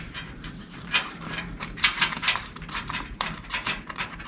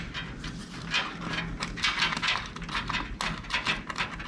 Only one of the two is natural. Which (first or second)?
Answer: second